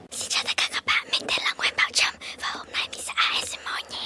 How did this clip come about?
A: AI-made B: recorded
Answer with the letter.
B